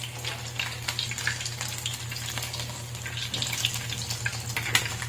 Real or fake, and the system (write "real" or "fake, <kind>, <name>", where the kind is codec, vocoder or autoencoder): real